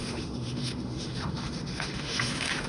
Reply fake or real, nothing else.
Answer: fake